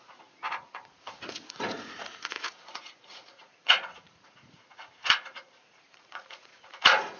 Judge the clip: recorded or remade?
remade